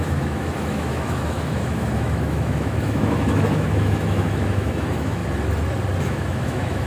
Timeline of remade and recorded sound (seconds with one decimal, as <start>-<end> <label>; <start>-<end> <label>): 0.0-5.2 remade; 5.2-6.0 recorded; 6.0-6.9 remade